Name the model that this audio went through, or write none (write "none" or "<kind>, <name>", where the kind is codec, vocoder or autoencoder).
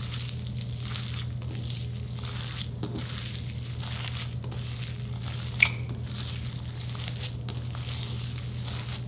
none